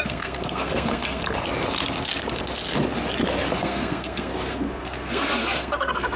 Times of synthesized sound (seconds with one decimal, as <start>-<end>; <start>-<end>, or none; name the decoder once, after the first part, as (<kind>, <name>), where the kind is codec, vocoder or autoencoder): 0.0-1.2 (codec, SNAC); 3.6-6.2